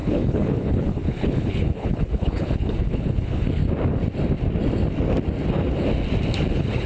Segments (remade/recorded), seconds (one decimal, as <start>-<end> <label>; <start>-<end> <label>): 0.0-3.6 remade; 3.6-6.5 recorded; 6.5-6.9 remade